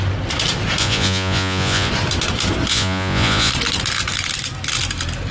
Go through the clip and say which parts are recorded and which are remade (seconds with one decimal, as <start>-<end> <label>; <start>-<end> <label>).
0.0-0.8 recorded; 0.8-1.9 remade; 1.9-2.7 recorded; 2.7-3.5 remade; 3.5-5.3 recorded